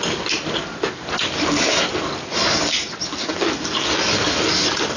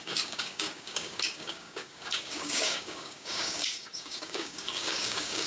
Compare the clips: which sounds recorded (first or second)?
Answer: first